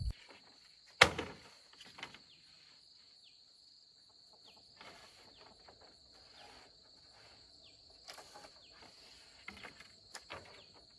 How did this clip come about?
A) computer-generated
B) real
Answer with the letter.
B